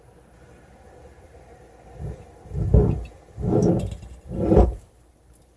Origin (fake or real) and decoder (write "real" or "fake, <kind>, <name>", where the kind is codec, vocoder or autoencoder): real